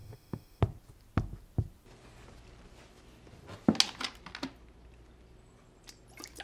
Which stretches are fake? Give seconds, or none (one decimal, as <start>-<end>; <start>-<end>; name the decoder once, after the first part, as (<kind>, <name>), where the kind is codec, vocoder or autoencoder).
0.0-0.6 (autoencoder, DAC-VAE)